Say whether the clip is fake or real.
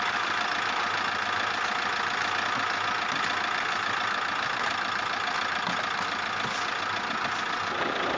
real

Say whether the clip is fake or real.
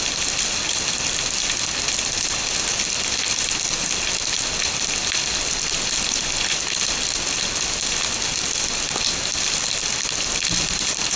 real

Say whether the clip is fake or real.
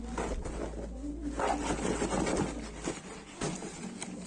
real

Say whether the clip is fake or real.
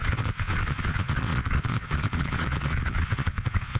fake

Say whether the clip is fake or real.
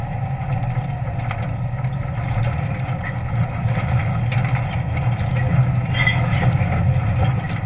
real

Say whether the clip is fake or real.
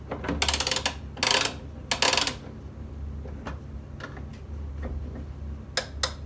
real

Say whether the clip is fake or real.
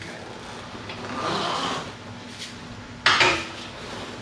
real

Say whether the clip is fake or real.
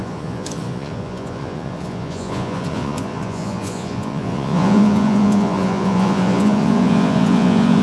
fake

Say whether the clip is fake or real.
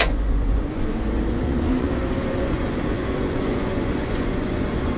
fake